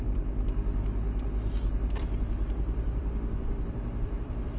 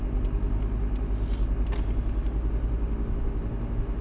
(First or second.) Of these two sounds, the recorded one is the second